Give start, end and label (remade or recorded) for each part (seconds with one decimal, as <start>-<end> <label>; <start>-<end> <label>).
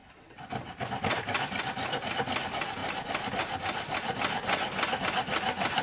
0.0-1.2 remade; 1.2-5.8 recorded